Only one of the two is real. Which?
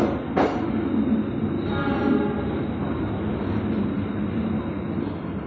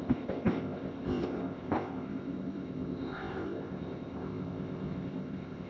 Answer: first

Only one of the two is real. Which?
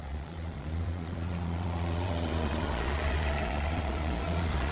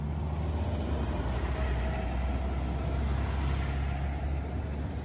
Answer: second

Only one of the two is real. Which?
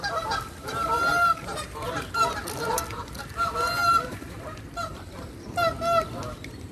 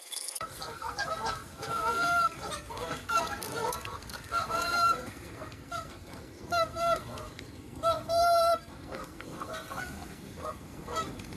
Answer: first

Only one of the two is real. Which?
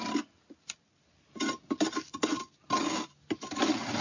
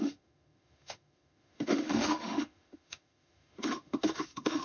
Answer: first